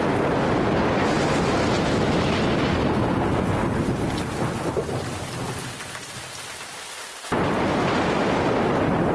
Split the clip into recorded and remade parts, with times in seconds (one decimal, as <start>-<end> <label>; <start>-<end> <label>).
0.0-9.1 recorded